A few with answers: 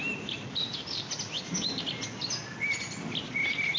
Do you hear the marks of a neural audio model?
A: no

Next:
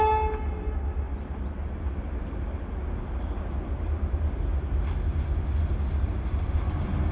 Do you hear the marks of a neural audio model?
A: no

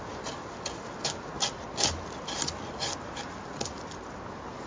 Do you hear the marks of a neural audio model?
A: no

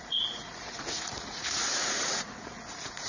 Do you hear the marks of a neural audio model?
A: yes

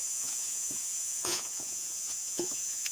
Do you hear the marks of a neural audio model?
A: yes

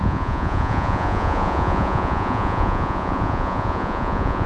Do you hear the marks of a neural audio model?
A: yes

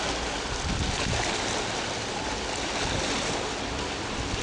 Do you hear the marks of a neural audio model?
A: no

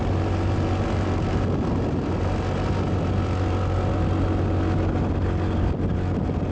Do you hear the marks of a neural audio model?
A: no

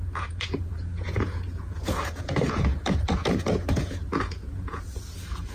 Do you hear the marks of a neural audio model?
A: yes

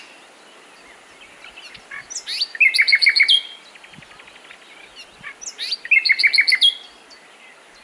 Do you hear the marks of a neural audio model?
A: no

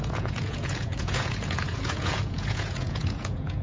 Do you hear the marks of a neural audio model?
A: yes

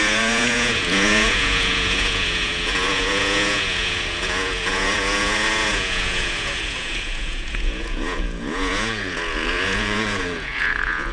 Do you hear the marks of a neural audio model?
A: yes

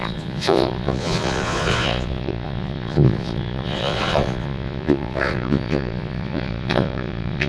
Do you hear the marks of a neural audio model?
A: yes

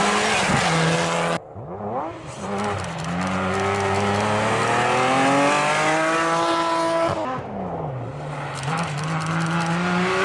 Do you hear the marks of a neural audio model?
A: no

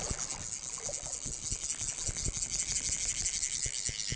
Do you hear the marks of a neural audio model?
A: no